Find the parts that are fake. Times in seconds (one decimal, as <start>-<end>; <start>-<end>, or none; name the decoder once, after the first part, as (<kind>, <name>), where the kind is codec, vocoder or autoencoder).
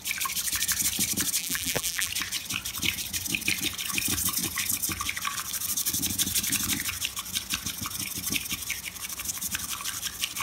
1.4-2.1 (vocoder, BigVGAN v2)